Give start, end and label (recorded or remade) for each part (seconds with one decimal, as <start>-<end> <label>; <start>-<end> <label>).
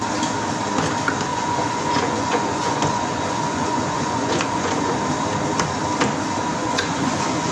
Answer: 0.0-1.3 recorded; 1.3-5.0 remade; 5.0-6.5 recorded; 6.5-7.5 remade